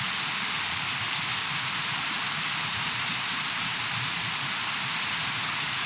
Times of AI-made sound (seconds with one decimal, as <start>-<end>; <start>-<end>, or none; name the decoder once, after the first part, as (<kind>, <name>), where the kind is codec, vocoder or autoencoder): none